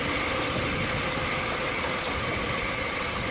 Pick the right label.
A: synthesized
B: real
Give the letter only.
B